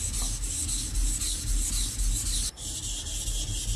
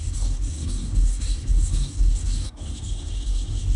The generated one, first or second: second